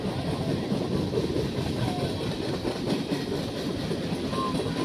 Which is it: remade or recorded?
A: recorded